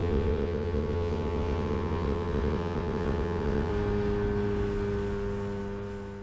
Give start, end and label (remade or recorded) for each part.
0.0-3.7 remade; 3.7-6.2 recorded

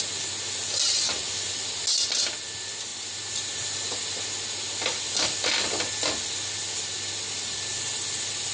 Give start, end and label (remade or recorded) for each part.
0.0-8.5 recorded

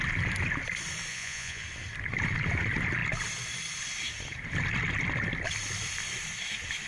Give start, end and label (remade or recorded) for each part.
0.0-1.1 recorded; 1.1-1.6 remade; 1.6-6.9 recorded

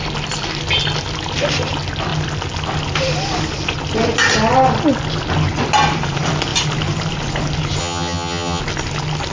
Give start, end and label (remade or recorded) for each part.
0.0-7.8 recorded; 7.8-8.6 remade; 8.6-9.3 recorded

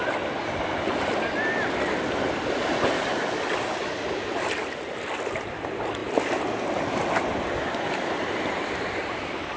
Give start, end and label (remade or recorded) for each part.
0.0-9.6 recorded

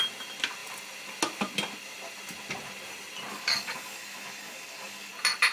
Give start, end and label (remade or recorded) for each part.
0.0-3.3 recorded; 3.3-5.1 remade; 5.1-5.5 recorded